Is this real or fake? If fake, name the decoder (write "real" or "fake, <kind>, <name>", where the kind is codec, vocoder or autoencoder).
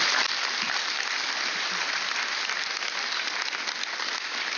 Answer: real